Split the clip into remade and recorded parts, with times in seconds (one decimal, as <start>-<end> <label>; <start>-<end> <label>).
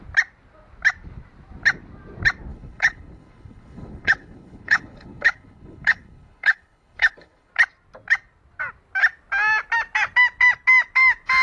0.0-2.5 recorded; 2.5-7.5 remade; 7.5-11.4 recorded